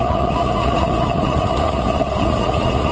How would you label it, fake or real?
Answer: fake